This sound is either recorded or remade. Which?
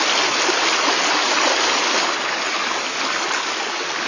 recorded